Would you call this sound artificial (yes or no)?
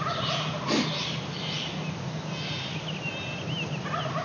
no